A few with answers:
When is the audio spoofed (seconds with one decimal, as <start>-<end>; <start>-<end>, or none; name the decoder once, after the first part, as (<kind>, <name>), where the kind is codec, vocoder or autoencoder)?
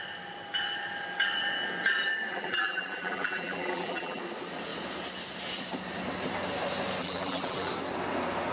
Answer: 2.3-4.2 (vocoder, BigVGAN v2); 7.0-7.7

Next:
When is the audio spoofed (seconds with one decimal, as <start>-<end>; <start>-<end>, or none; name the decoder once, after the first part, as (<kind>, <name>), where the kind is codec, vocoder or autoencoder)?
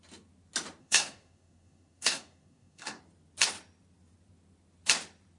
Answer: 0.8-3.0 (codec, SNAC)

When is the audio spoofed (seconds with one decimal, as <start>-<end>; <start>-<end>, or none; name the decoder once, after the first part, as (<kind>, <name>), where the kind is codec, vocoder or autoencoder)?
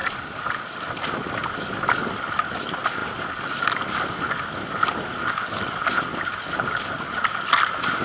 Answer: none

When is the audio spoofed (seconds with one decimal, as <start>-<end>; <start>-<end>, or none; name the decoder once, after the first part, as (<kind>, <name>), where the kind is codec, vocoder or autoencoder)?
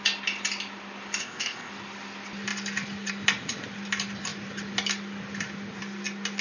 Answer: 1.2-1.7 (codec, ZipCodec)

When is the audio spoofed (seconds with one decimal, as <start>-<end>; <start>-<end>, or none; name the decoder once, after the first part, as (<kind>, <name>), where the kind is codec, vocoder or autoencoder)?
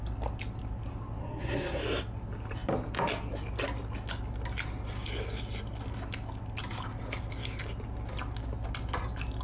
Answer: 1.2-1.8 (codec, SNAC)